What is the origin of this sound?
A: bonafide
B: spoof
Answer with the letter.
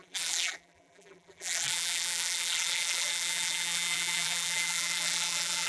B